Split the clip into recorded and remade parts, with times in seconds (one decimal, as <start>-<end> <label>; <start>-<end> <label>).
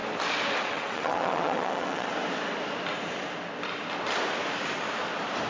0.0-0.6 recorded; 0.6-2.1 remade; 2.1-5.5 recorded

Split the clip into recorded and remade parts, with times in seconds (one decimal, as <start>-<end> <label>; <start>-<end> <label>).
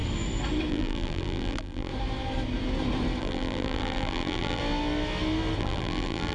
0.0-0.7 recorded; 0.7-1.9 remade; 1.9-3.2 recorded; 3.2-4.6 remade; 4.6-5.6 recorded; 5.6-6.3 remade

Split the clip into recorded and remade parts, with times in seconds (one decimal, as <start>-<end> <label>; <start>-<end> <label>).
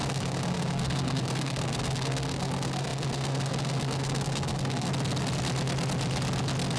0.0-4.9 remade; 4.9-6.8 recorded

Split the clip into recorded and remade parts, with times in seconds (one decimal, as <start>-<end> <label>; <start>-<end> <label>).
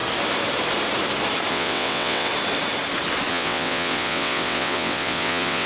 0.0-1.5 recorded; 1.5-2.3 remade; 2.3-3.3 recorded; 3.3-5.7 remade